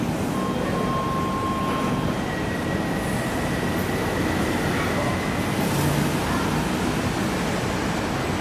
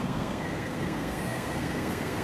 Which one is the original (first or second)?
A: first